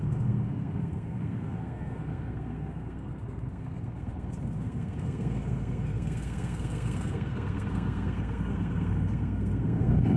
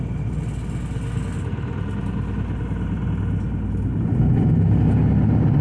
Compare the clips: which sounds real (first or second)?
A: second